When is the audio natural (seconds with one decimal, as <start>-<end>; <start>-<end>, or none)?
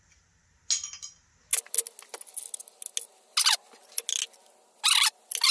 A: 0.0-5.5